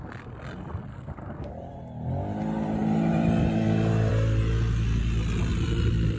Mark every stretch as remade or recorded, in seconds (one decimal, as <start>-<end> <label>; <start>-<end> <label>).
0.0-0.9 recorded; 0.9-1.5 remade; 1.5-6.2 recorded